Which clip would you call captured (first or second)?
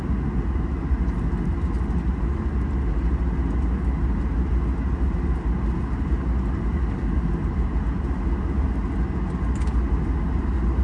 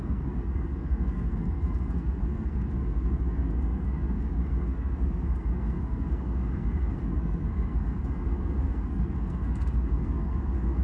first